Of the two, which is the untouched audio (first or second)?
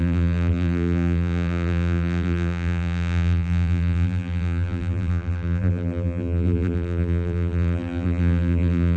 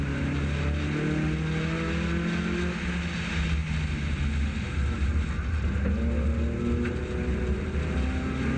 second